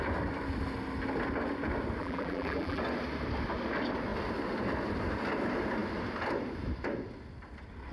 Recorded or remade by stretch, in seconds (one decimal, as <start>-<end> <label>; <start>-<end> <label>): 0.0-2.0 recorded; 2.0-2.8 remade; 2.8-7.9 recorded